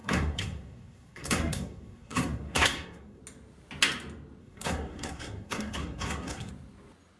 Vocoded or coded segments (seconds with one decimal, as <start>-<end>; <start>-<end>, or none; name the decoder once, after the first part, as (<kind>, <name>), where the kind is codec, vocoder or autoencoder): 0.0-3.2 (codec, SNAC); 4.4-6.5